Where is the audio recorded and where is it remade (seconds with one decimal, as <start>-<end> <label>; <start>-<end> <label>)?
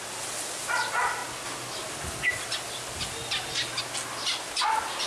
0.0-5.1 recorded